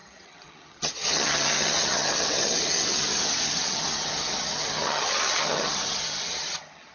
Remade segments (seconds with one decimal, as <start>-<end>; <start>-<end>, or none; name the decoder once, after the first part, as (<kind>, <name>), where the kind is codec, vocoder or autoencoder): 0.0-6.9 (vocoder, HiFi-GAN)